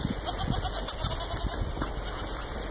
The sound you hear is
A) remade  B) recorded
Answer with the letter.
A